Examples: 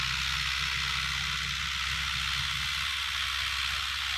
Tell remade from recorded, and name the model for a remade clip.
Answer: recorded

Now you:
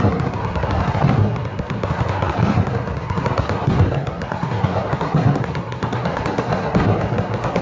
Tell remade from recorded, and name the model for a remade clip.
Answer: remade, codec, SNAC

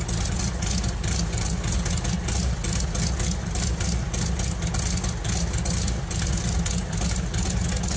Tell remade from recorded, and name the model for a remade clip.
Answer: recorded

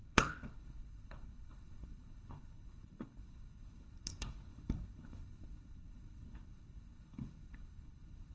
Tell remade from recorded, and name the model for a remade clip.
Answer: remade, codec, HILCodec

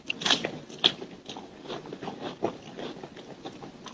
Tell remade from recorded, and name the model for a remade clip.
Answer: recorded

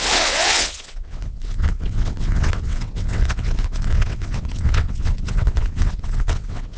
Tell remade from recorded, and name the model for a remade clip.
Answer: remade, vocoder, WaveNeXt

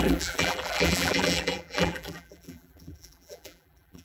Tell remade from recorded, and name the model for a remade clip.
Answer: remade, vocoder, BigVGAN v2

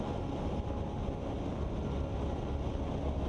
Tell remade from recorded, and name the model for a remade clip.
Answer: recorded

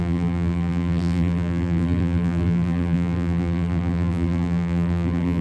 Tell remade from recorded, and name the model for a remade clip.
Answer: remade, vocoder, BigVGAN v2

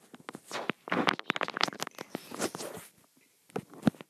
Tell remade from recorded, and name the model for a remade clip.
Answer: recorded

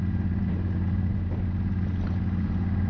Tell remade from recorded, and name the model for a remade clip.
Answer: recorded